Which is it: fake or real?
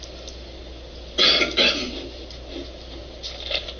real